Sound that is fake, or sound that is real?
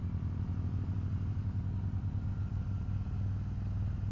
real